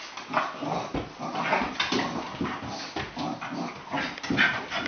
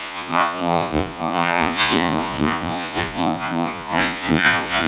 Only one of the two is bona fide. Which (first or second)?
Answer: first